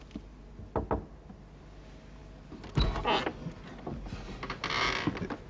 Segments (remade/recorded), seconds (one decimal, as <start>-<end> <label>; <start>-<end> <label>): 0.0-5.5 recorded